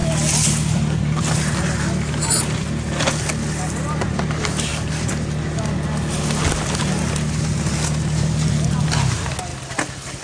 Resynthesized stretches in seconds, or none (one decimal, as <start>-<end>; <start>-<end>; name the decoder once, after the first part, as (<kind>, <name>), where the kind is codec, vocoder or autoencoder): none